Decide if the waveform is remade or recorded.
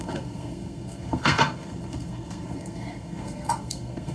remade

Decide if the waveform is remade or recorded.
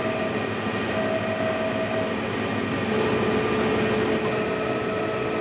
recorded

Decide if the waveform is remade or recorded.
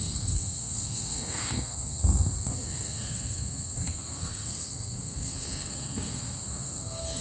remade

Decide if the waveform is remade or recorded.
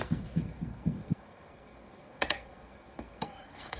remade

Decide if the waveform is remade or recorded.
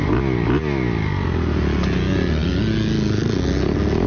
recorded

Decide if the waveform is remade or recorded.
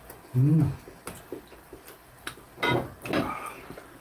recorded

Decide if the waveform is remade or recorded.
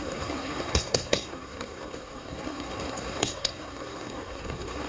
remade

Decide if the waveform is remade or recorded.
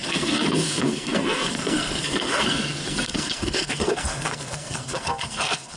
remade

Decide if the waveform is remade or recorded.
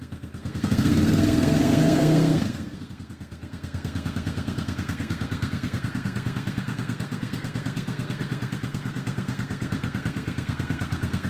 remade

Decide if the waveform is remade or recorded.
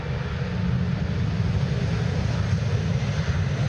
recorded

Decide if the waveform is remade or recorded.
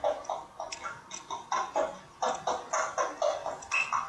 recorded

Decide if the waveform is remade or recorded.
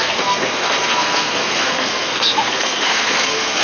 remade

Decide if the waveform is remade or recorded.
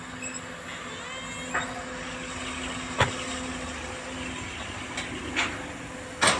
recorded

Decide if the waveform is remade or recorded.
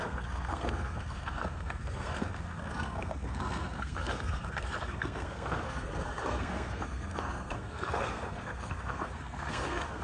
remade